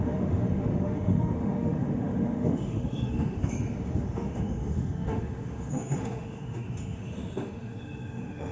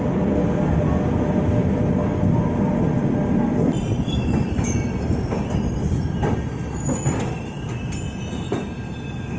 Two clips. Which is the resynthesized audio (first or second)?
first